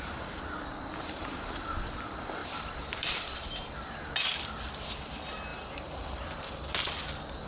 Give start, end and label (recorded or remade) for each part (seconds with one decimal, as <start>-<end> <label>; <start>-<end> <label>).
0.0-1.0 recorded; 1.0-1.9 remade; 1.9-2.4 recorded; 2.4-4.1 remade; 4.1-5.5 recorded; 5.5-6.2 remade; 6.2-7.5 recorded